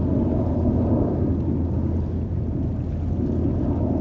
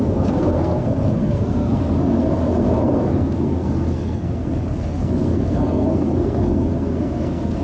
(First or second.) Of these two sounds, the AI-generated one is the second